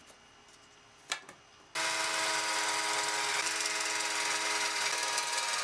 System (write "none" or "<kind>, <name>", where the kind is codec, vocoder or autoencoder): none